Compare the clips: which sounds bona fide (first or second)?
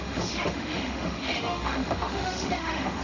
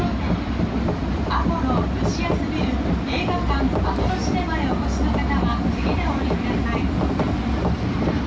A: second